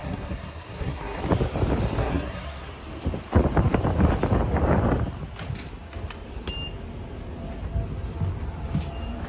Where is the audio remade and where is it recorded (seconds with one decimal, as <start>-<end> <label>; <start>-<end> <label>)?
0.0-1.2 remade; 1.2-2.0 recorded; 2.0-2.7 remade; 2.7-9.3 recorded